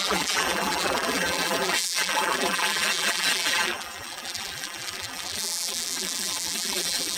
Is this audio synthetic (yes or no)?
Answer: yes